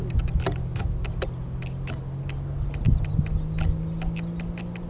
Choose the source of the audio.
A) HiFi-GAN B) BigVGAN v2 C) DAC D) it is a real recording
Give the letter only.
D